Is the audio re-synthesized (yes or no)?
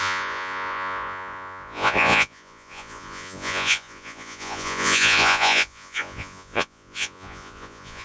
yes